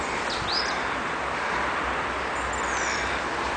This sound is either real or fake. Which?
real